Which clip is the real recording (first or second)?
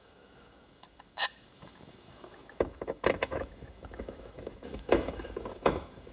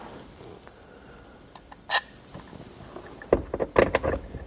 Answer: second